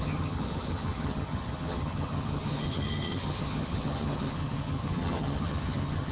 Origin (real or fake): fake